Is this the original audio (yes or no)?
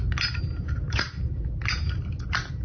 yes